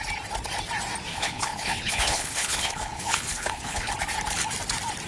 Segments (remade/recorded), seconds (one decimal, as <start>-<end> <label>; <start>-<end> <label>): 0.0-1.1 recorded; 1.1-3.9 remade; 3.9-5.1 recorded